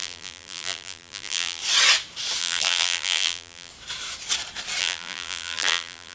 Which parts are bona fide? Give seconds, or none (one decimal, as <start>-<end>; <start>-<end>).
1.6-2.4; 3.7-4.8